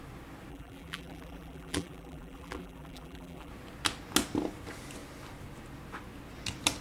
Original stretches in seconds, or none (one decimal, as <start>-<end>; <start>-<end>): 0.0-0.5; 3.5-6.8